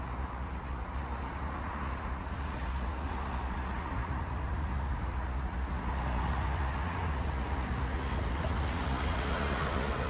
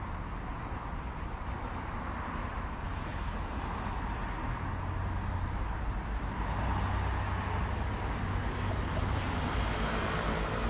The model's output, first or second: first